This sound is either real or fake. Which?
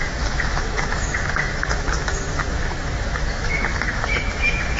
fake